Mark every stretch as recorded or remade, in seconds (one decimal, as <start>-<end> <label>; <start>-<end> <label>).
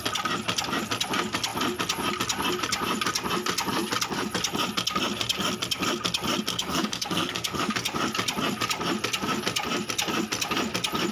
0.0-6.5 recorded; 6.5-7.7 remade; 7.7-11.1 recorded